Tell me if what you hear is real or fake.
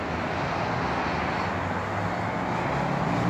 real